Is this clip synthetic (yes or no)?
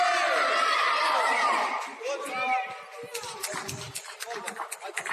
no